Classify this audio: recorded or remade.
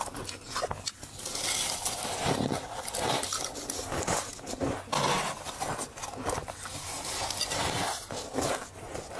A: recorded